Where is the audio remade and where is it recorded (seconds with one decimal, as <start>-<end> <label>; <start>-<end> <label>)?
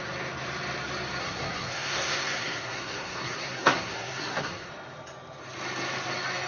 0.0-1.2 recorded; 1.2-4.7 remade; 4.7-6.5 recorded